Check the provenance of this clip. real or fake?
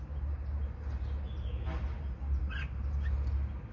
real